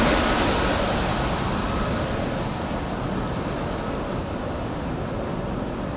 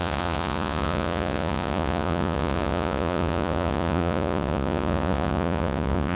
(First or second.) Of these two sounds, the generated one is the second